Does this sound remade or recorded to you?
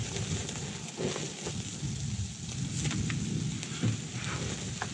recorded